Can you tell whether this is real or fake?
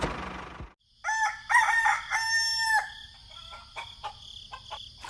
real